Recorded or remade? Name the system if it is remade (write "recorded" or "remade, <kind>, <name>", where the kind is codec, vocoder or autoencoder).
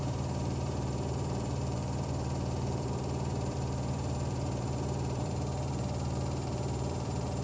remade, vocoder, BigVGAN v2